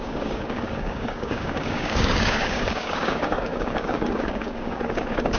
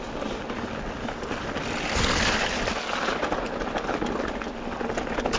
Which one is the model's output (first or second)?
first